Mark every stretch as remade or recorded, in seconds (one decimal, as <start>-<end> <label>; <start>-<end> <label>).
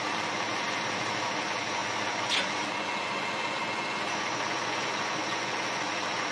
0.0-6.3 remade